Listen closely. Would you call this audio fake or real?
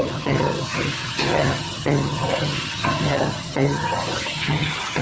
fake